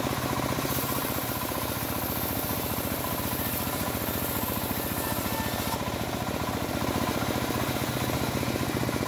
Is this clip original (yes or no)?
yes